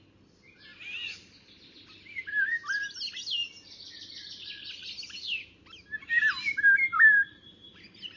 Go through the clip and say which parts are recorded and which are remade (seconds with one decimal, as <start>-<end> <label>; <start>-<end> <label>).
0.0-6.9 recorded; 6.9-8.2 remade